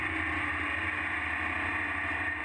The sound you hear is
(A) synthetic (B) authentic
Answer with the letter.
A